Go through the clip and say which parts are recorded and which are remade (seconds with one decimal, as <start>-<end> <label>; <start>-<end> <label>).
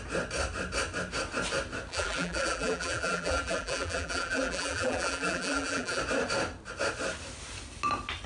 0.0-1.9 recorded; 1.9-6.0 remade; 6.0-8.3 recorded